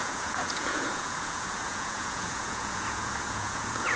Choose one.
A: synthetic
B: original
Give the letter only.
A